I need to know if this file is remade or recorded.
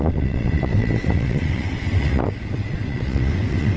remade